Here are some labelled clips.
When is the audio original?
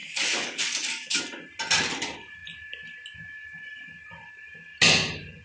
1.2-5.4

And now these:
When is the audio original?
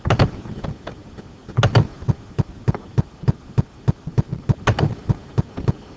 0.0-6.0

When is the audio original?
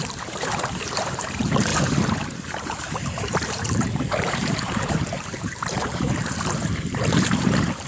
none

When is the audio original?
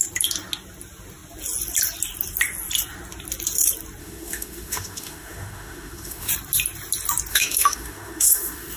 0.0-4.0; 6.3-7.3